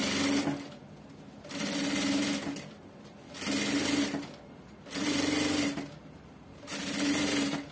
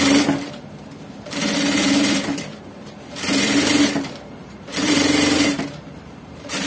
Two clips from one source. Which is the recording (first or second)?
first